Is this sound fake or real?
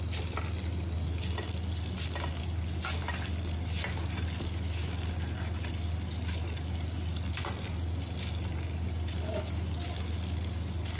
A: real